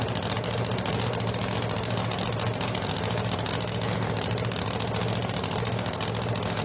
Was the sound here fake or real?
real